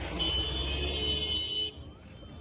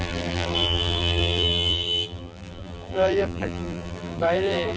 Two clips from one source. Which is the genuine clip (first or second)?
first